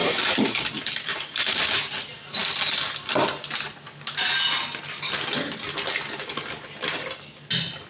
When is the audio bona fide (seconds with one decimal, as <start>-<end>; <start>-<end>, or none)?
1.9-7.9